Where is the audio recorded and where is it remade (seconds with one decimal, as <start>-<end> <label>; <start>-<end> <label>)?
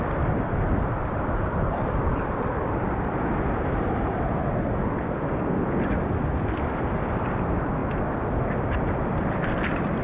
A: 0.0-10.0 remade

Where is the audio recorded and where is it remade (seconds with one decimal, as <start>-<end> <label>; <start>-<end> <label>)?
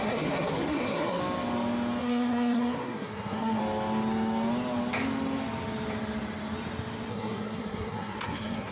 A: 0.0-1.2 remade; 1.2-2.0 recorded; 2.0-3.6 remade; 3.6-7.1 recorded; 7.1-8.7 remade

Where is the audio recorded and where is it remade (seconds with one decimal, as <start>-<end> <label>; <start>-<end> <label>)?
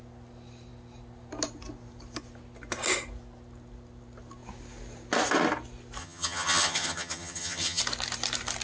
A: 0.0-6.0 recorded; 6.0-7.8 remade; 7.8-8.6 recorded